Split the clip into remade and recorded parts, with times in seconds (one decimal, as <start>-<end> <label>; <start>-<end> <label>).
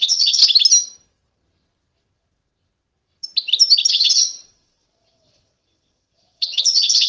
0.0-0.4 remade; 0.4-3.9 recorded; 3.9-7.1 remade